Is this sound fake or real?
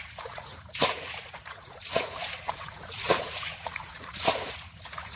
fake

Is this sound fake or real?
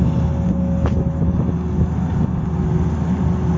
real